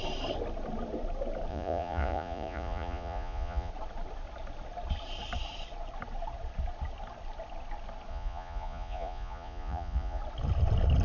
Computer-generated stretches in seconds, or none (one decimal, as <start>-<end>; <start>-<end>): 1.5-3.7; 8.1-10.2